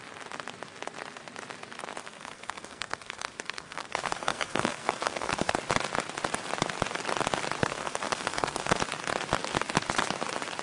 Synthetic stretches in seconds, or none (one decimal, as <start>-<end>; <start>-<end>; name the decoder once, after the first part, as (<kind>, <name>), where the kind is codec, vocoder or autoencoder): 2.0-5.6 (codec, SNAC); 7.6-8.8